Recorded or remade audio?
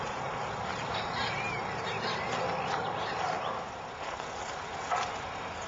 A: recorded